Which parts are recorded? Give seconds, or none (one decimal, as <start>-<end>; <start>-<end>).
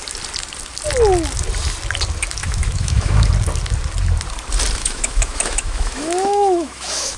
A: 0.0-2.4; 3.3-4.8